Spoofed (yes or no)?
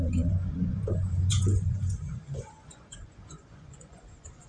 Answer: yes